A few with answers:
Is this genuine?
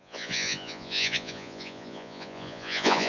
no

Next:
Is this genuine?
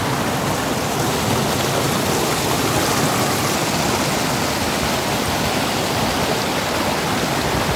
yes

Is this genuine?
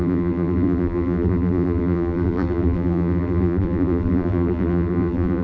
no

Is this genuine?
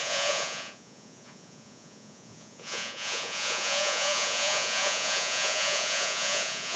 no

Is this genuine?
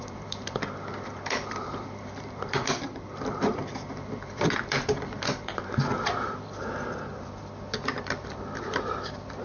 no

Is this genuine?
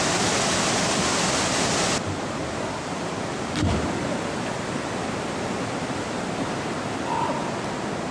no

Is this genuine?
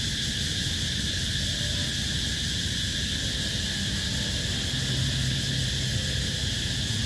yes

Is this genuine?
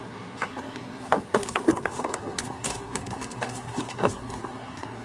no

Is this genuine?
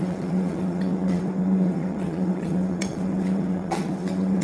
no